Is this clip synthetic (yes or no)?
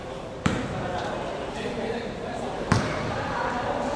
yes